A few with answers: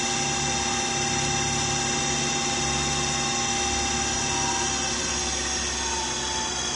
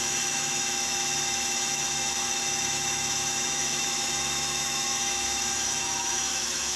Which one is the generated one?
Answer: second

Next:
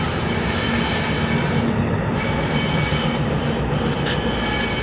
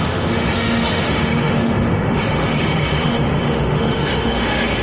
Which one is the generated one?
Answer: second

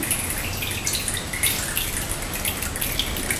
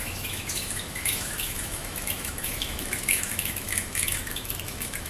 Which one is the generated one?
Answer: second